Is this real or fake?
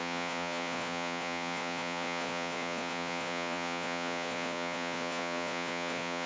fake